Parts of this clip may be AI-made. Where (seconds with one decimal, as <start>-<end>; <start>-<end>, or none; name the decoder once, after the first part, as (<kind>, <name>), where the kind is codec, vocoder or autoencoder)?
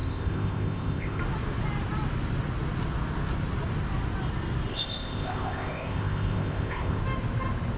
0.0-1.2 (codec, ZipCodec); 4.7-7.0